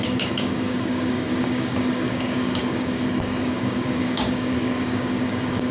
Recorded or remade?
remade